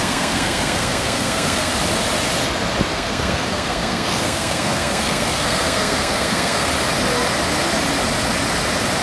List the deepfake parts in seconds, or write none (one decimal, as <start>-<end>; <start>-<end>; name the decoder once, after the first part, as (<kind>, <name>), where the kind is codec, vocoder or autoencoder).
0.0-1.7 (codec, SNAC); 2.9-6.7

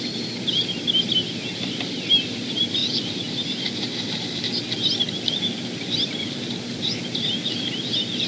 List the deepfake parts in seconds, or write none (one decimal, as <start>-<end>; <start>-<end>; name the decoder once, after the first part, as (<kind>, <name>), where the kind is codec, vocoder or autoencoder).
1.2-2.3 (vocoder, BigVGAN v2); 2.8-3.6

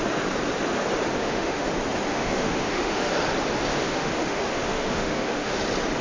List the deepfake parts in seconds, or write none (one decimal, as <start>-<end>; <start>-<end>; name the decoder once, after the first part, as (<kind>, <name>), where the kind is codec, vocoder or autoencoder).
1.2-1.7 (autoencoder, DAC-VAE); 2.1-3.1; 3.7-5.6

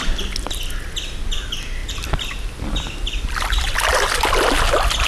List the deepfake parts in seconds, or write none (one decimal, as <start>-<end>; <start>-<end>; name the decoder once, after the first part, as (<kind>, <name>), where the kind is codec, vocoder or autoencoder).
1.8-3.2 (vocoder, BigVGAN v2); 3.9-5.1

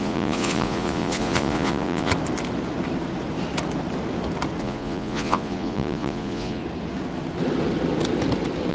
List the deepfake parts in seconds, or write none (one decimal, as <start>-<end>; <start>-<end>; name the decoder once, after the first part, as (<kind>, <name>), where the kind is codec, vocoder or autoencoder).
0.0-2.1 (vocoder, Vocos); 4.6-6.6

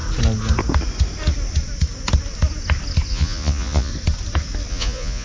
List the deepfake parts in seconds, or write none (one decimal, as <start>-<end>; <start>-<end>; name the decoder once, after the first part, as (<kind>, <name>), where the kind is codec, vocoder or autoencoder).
3.1-3.9 (vocoder, Vocos); 4.7-5.2